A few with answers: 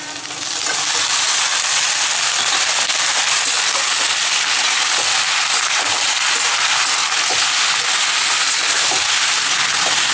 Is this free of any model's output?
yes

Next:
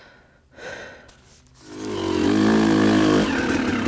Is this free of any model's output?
yes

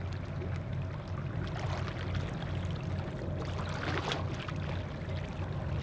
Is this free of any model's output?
yes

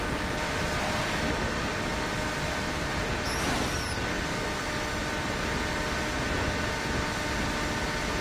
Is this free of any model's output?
yes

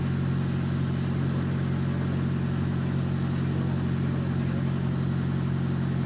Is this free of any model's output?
yes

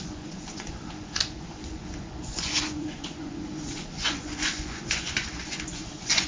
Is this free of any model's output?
no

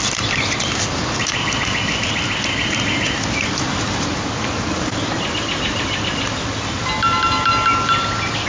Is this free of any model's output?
yes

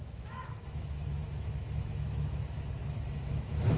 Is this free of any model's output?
no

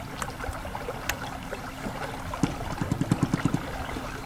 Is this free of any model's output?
yes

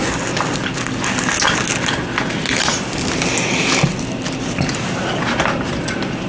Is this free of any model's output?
yes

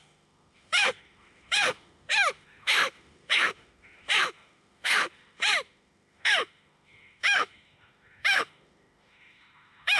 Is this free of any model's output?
no